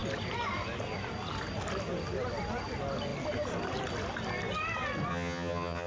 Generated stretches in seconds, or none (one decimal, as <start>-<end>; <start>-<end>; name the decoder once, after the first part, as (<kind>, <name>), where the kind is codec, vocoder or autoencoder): 5.1-5.9 (vocoder, HiFi-GAN)